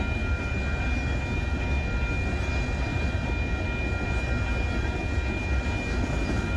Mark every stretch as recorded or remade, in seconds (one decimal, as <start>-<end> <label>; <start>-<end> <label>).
0.0-6.6 recorded